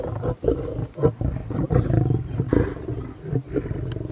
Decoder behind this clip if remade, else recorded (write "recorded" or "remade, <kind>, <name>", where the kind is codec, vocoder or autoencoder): recorded